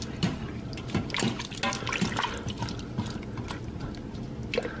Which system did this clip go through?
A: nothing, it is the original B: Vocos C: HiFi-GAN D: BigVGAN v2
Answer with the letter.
A